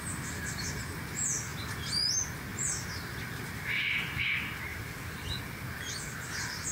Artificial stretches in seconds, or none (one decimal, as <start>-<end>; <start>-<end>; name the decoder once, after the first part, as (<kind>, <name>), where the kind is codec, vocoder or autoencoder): 1.5-2.1 (vocoder, BigVGAN v2); 2.5-4.2; 4.7-5.4